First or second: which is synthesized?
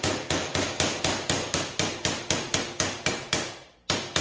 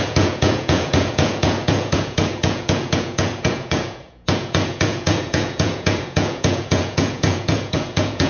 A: second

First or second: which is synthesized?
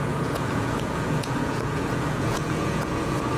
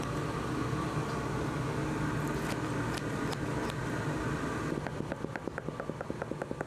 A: first